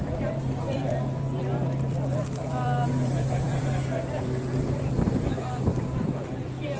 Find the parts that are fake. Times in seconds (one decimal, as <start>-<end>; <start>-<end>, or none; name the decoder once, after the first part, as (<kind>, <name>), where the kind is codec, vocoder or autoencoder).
0.0-6.8 (vocoder, BigVGAN v2)